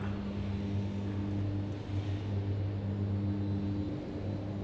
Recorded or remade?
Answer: recorded